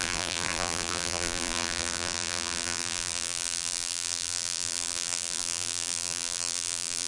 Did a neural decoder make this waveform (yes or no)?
yes